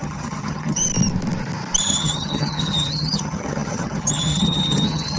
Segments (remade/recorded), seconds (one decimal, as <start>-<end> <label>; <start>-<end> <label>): 0.0-0.8 remade; 0.8-1.8 recorded; 1.8-5.2 remade